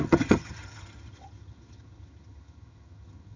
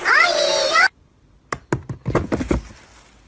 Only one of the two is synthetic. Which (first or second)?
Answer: first